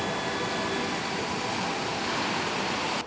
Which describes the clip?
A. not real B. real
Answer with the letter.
B